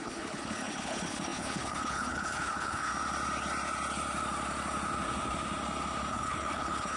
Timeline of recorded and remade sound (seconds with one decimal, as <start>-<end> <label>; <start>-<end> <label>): 0.0-2.9 remade; 2.9-6.1 recorded; 6.1-7.0 remade